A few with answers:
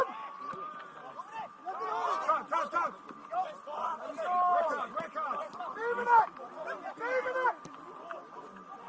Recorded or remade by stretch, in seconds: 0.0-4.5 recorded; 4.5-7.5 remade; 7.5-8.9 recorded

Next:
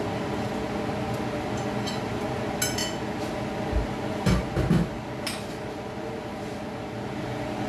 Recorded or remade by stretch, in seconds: 0.0-7.7 recorded

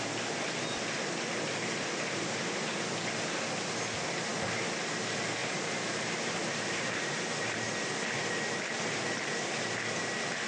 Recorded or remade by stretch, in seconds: 0.0-5.4 recorded; 5.4-6.4 remade; 6.4-10.5 recorded

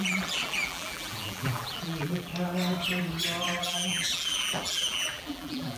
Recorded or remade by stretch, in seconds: 0.0-2.3 remade; 2.3-3.6 recorded; 3.6-5.8 remade

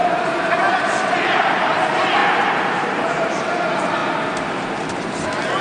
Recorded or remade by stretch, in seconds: 0.0-1.8 remade; 1.8-2.2 recorded; 2.2-3.3 remade; 3.3-5.6 recorded

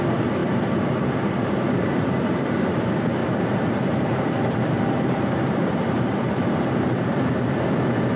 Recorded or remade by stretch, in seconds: 0.0-0.4 recorded; 0.4-2.8 remade; 2.8-3.2 recorded; 3.2-7.3 remade; 7.3-8.2 recorded